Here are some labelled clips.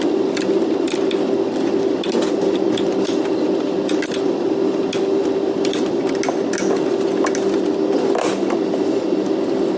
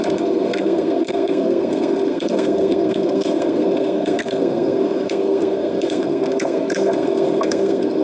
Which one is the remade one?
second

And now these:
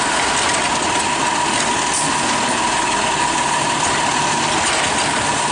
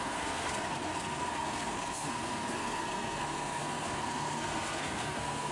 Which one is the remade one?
second